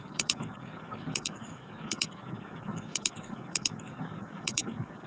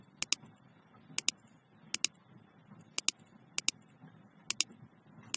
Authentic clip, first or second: second